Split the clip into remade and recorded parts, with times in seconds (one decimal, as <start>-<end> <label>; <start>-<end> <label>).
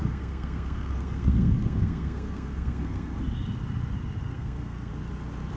0.0-3.2 remade; 3.2-4.2 recorded; 4.2-4.9 remade; 4.9-5.6 recorded